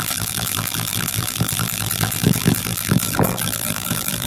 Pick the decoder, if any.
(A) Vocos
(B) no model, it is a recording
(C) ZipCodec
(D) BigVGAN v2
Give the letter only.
D